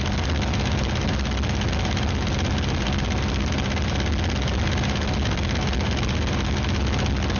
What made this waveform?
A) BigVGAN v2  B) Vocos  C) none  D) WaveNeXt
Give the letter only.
C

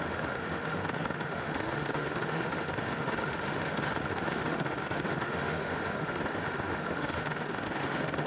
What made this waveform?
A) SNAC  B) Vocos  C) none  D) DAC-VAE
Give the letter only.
D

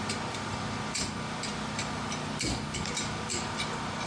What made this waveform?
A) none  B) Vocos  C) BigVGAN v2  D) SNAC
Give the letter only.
A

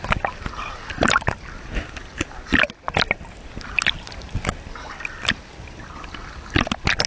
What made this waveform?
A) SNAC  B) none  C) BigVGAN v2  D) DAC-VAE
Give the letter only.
B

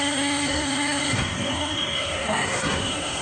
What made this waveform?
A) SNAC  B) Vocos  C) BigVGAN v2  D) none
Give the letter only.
A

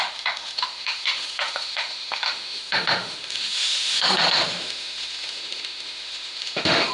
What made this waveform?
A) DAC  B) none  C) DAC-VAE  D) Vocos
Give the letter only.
C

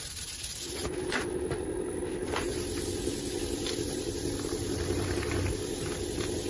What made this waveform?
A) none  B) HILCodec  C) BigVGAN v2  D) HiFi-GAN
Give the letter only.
A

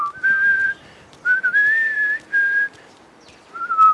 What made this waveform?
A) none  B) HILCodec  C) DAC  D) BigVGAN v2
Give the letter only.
D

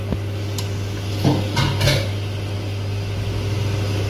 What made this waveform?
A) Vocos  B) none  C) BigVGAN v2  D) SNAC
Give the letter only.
B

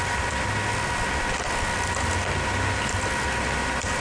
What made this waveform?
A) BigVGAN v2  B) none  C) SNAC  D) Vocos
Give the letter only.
A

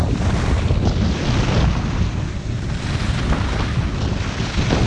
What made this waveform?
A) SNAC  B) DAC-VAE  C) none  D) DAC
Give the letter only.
C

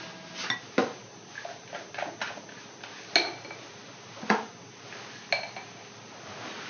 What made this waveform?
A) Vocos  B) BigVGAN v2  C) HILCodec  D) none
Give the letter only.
D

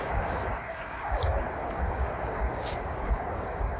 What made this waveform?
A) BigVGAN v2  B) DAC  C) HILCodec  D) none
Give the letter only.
B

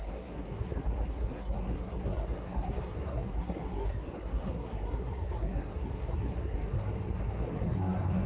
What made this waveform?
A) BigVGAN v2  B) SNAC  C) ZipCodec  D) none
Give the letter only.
B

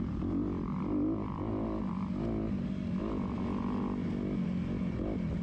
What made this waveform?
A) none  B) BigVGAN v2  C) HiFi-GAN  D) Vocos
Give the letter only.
A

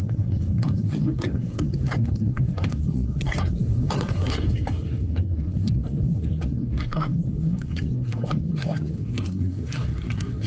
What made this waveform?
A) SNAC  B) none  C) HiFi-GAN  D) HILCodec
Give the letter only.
A